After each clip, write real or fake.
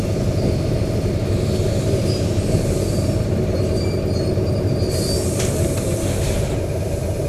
real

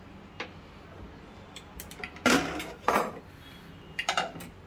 real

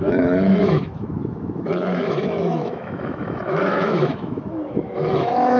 fake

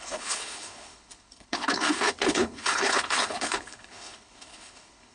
fake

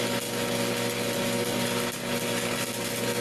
real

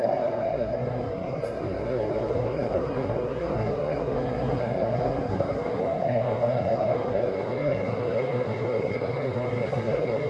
fake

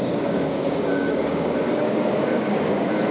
fake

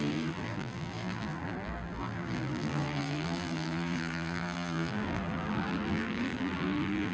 fake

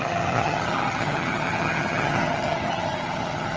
fake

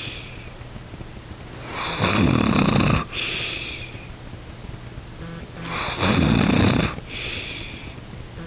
real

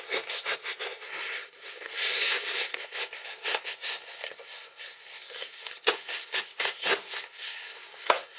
fake